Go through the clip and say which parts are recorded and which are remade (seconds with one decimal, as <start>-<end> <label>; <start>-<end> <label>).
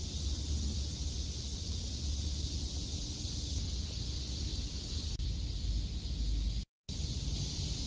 0.0-7.9 recorded